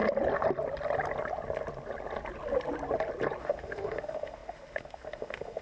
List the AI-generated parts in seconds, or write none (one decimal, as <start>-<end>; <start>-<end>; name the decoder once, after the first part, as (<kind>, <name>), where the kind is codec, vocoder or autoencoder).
3.4-5.6 (autoencoder, DAC-VAE)

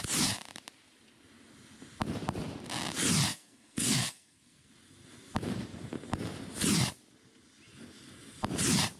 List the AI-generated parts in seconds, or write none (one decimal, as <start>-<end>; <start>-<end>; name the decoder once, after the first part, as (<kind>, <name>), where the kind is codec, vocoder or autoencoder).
3.3-4.7 (codec, SNAC)

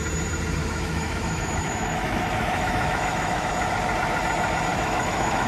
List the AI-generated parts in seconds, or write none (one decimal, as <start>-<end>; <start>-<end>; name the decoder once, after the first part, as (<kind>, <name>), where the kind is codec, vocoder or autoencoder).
0.6-3.5 (autoencoder, DAC-VAE); 4.7-5.5

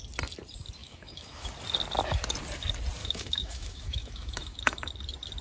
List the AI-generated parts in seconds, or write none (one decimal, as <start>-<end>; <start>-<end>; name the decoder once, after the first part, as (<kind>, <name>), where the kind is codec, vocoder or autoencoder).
0.8-1.5 (autoencoder, DAC-VAE); 3.0-4.9